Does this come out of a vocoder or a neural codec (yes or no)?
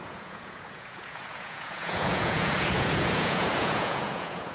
yes